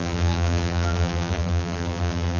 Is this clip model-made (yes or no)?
yes